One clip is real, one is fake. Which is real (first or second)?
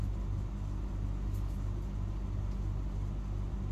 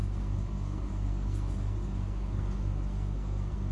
first